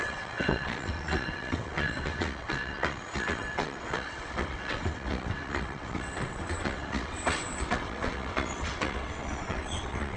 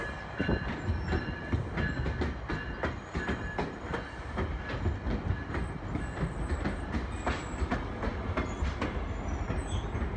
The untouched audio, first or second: second